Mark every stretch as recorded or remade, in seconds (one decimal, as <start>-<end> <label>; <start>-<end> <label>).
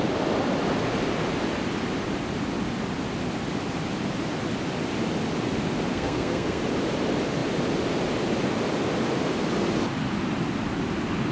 0.0-5.9 recorded; 5.9-6.6 remade; 6.6-11.3 recorded